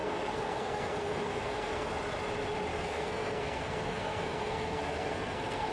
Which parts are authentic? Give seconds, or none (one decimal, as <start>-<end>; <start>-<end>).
1.9-2.7

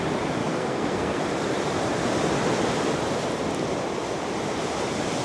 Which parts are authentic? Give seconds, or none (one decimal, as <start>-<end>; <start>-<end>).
0.0-0.4; 1.2-5.2

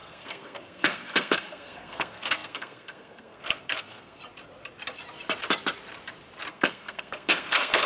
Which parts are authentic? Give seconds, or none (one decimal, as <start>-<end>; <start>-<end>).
4.2-6.5

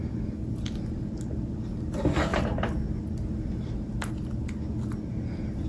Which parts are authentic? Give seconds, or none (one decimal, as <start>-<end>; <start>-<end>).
0.0-5.7

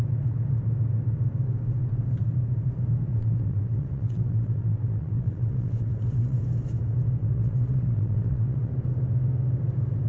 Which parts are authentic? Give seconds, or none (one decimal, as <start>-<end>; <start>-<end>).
0.0-3.1; 6.4-7.2; 8.7-10.1